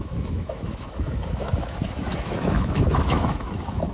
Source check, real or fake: fake